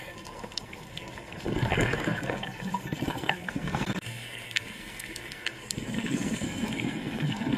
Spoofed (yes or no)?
yes